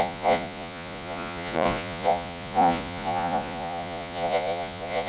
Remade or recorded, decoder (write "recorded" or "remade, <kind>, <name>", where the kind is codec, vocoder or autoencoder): remade, vocoder, Vocos